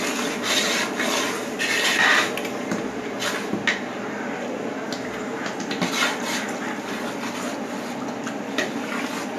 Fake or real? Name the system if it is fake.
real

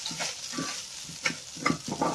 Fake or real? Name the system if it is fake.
real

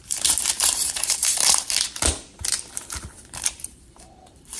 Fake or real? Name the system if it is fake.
fake, vocoder, BigVGAN v2